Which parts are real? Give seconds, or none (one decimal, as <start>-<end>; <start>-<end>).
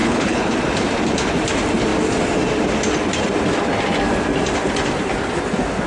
0.5-5.9